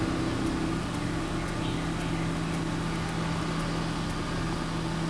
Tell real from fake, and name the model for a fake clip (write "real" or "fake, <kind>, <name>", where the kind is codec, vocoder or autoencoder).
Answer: real